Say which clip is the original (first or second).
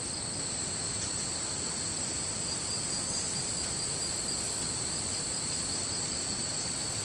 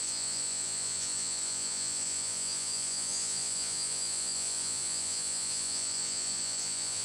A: first